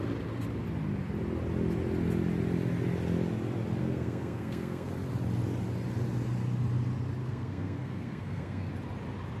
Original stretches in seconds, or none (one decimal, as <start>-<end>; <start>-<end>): 0.0-3.8; 4.9-7.2; 8.7-9.4